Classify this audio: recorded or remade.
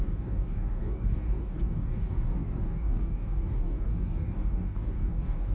remade